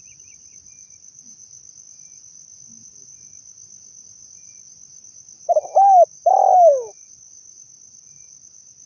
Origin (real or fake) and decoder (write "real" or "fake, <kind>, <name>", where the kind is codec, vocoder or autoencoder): real